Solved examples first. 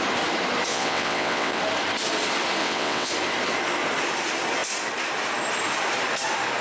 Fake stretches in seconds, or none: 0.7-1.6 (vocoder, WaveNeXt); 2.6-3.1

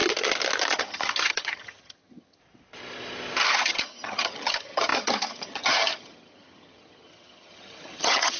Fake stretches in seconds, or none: 0.8-2.4 (vocoder, HiFi-GAN); 3.5-8.4

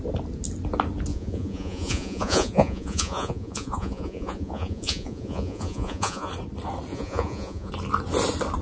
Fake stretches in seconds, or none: 1.1-6.3 (vocoder, Vocos); 6.9-7.7

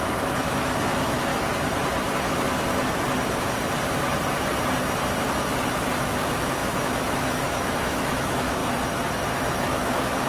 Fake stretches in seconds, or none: 0.0-1.3 (autoencoder, DAC-VAE); 6.0-8.6; 9.6-10.3